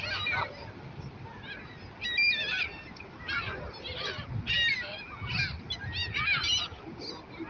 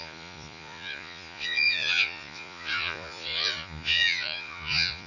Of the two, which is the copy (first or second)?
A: second